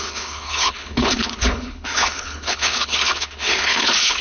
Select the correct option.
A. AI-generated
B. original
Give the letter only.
A